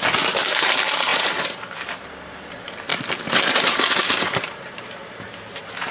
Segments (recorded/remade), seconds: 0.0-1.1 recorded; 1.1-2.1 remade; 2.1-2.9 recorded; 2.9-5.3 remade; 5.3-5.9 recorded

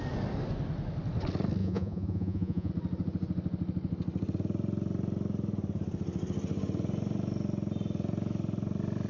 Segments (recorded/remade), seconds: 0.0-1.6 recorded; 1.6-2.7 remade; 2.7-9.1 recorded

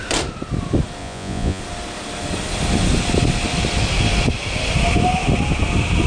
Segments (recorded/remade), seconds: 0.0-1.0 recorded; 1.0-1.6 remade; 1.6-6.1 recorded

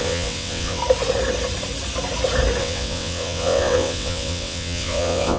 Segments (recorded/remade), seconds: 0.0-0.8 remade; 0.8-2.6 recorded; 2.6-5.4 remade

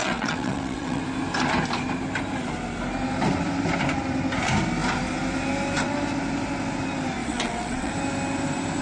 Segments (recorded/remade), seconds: 0.0-1.0 remade; 1.0-7.2 recorded; 7.2-7.9 remade; 7.9-8.8 recorded

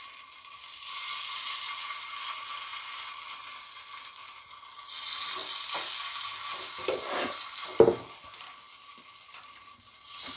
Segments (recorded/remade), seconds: 0.0-10.4 recorded

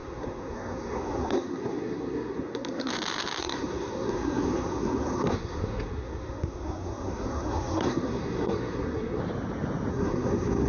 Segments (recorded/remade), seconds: 0.0-2.9 remade; 2.9-3.4 recorded; 3.4-9.2 remade; 9.2-9.9 recorded; 9.9-10.7 remade